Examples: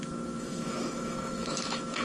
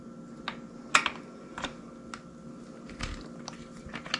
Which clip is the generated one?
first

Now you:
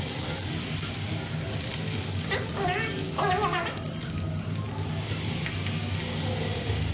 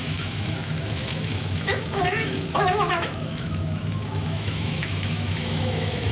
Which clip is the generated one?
second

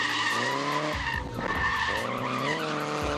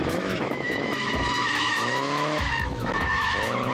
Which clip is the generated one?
second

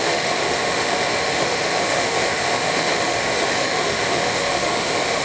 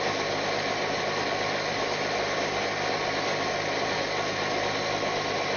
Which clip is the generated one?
first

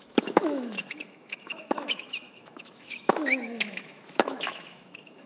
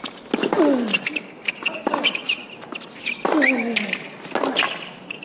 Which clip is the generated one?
first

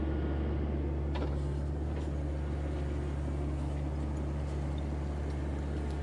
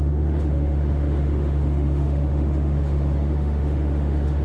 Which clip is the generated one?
second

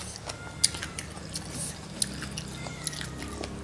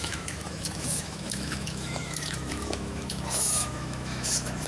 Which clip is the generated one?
second